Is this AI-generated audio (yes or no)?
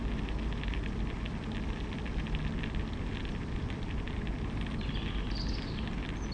no